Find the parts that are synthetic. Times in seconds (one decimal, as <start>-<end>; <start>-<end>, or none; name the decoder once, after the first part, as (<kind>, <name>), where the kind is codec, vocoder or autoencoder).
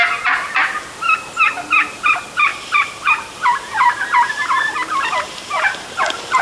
2.5-6.4 (vocoder, BigVGAN v2)